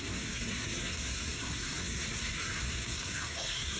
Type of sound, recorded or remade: remade